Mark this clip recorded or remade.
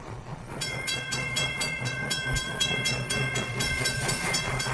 remade